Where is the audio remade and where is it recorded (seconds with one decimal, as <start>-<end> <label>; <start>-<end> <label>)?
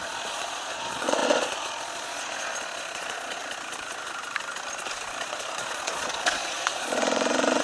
0.0-3.4 remade; 3.4-5.2 recorded; 5.2-7.6 remade